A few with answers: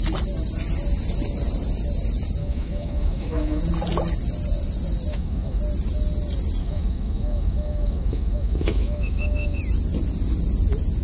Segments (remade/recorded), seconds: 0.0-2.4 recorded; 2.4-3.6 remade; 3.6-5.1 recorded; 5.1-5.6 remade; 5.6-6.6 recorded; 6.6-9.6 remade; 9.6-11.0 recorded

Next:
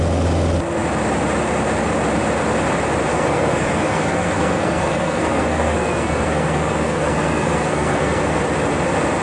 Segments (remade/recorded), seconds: 0.0-3.1 recorded; 3.1-8.4 remade; 8.4-9.2 recorded

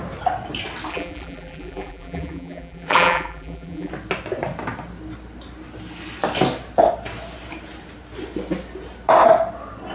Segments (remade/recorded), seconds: 0.0-0.9 recorded; 0.9-3.9 remade; 3.9-9.9 recorded

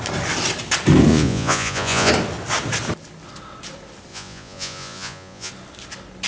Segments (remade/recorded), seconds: 0.0-1.1 recorded; 1.1-2.1 remade; 2.1-4.1 recorded; 4.1-5.5 remade; 5.5-6.3 recorded

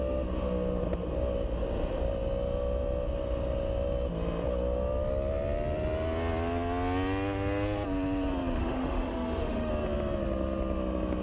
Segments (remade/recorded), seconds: 0.0-8.6 recorded; 8.6-9.7 remade; 9.7-11.2 recorded

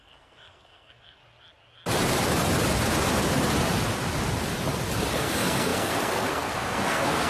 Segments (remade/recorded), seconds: 0.0-1.2 remade; 1.2-5.1 recorded; 5.1-7.3 remade